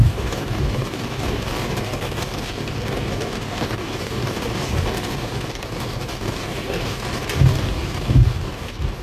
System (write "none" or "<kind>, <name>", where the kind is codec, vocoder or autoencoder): codec, DAC